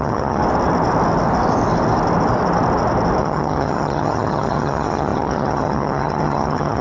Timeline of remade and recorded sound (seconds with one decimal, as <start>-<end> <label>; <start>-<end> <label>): 0.0-0.4 remade; 0.4-3.2 recorded; 3.2-6.8 remade